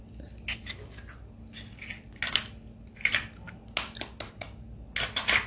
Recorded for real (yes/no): yes